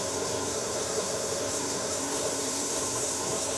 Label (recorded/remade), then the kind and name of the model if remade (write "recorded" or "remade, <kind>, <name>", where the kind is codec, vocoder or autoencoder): remade, codec, SNAC